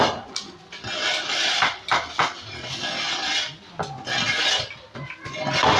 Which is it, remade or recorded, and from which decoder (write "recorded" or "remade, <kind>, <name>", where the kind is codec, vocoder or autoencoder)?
recorded